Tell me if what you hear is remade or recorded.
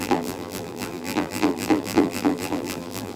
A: remade